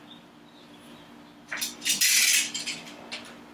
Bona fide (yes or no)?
yes